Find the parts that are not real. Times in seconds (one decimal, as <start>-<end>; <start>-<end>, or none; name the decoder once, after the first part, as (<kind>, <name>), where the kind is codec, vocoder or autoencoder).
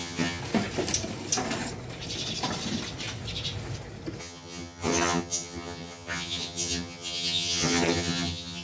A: 0.0-0.4 (vocoder, HiFi-GAN); 4.2-8.6